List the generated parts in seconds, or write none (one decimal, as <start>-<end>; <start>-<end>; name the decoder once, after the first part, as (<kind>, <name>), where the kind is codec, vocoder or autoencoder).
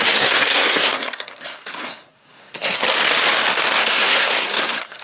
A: 0.0-2.8 (codec, SNAC); 3.8-5.0